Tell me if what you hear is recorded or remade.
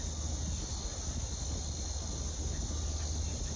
recorded